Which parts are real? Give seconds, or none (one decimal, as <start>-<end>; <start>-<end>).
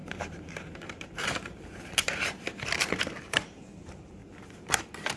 2.6-4.2; 4.8-5.2